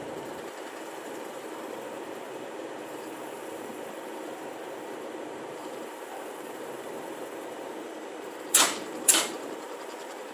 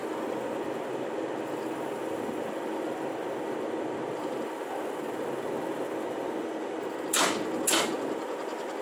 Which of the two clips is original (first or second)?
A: second